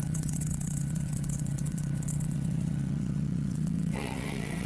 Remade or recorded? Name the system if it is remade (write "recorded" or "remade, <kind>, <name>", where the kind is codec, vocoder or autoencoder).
remade, vocoder, WaveNeXt